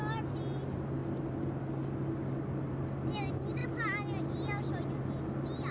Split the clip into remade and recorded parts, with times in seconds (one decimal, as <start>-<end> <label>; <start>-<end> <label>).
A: 0.0-5.7 recorded